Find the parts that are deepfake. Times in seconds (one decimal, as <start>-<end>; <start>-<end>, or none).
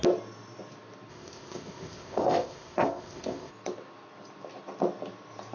1.1-3.5